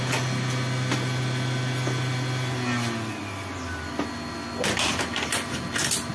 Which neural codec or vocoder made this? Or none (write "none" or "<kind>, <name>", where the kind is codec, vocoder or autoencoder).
none